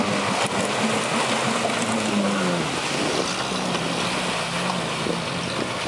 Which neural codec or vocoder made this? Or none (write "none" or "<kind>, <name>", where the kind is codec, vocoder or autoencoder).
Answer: none